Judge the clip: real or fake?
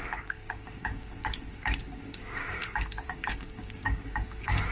fake